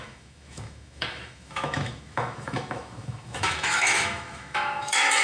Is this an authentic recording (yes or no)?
no